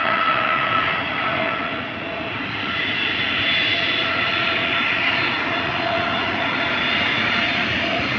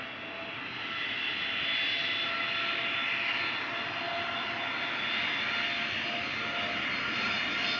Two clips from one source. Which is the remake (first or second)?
first